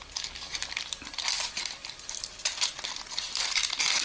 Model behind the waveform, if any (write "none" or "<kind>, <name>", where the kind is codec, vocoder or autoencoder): none